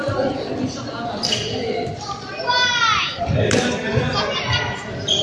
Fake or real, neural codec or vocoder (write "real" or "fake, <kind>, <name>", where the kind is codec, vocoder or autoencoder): fake, vocoder, BigVGAN v2